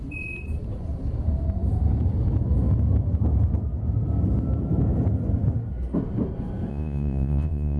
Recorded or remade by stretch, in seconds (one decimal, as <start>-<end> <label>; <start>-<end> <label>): 0.0-6.7 recorded; 6.7-7.8 remade